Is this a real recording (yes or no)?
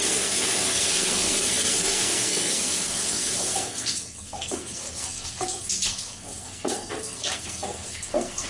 no